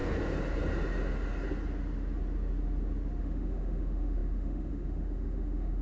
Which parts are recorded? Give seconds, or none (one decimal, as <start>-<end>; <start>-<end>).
0.0-3.2

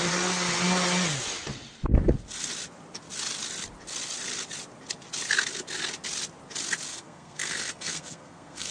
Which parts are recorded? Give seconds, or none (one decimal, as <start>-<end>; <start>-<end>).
0.0-6.9

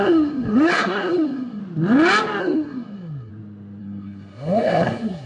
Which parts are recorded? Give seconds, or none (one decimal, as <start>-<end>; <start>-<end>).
1.6-2.4; 3.3-3.8

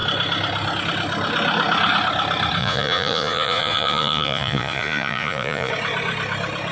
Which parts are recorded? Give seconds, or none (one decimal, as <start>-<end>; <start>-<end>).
0.0-2.6; 5.7-6.7

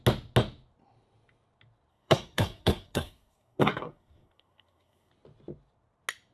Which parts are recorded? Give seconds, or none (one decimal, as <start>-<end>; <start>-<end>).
0.0-1.9; 5.1-6.3